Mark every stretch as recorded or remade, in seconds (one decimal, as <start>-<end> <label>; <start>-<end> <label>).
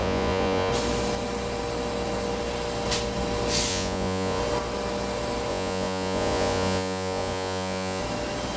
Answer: 0.0-0.7 remade; 0.7-3.7 recorded; 3.7-4.4 remade; 4.4-5.5 recorded; 5.5-8.0 remade; 8.0-8.6 recorded